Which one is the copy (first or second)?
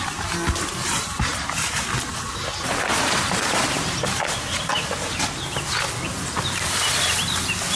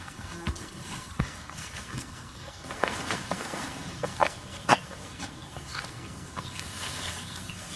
second